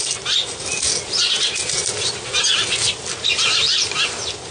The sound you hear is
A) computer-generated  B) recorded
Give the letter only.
B